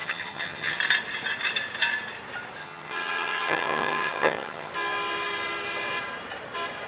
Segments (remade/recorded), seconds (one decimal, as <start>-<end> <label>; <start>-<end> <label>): 0.0-0.8 remade; 0.8-2.6 recorded; 2.6-4.7 remade; 4.7-6.9 recorded